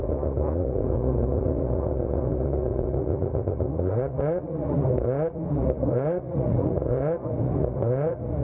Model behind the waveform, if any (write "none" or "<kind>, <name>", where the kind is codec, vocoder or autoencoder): vocoder, Vocos